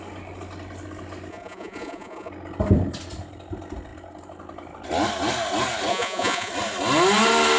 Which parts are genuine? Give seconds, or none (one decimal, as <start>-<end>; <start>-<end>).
0.0-1.3; 2.3-5.9; 6.5-7.6